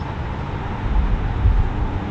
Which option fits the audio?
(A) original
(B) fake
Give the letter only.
A